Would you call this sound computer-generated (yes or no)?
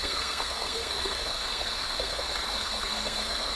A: yes